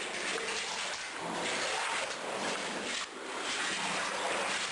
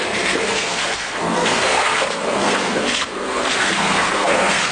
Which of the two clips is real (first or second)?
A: first